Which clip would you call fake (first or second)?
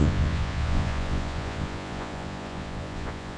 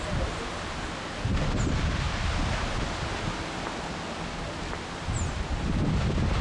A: first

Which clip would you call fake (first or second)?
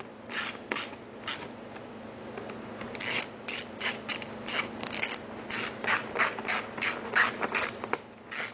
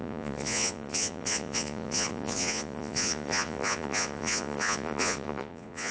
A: second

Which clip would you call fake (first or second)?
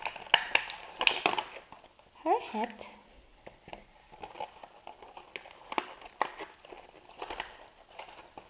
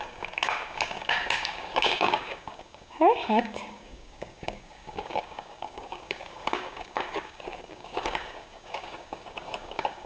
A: second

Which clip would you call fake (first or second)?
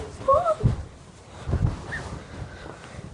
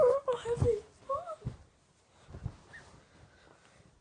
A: first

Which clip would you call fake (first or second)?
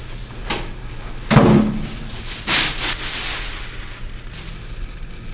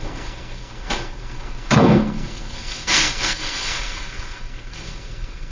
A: second